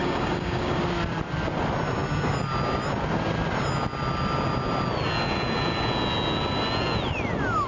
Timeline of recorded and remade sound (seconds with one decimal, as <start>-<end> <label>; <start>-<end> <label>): 0.0-0.8 remade; 0.8-7.7 recorded